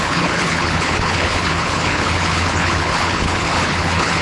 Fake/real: fake